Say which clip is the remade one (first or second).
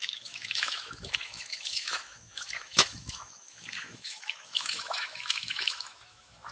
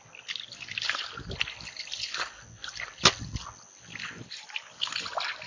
first